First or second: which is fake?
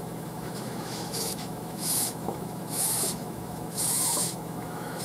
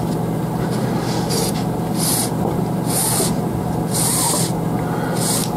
first